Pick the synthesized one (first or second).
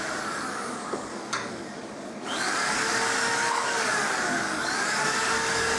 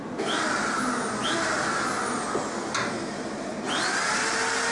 first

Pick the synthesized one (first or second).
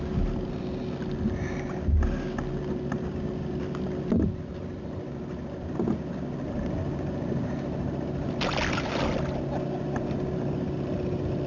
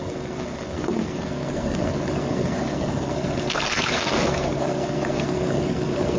second